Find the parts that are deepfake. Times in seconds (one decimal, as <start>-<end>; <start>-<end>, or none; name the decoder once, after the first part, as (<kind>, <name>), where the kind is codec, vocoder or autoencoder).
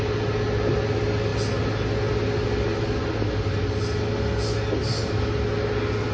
none